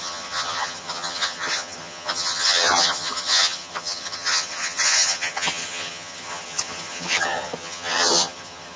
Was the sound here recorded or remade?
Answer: remade